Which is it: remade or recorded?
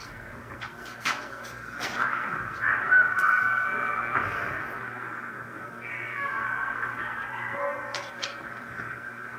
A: remade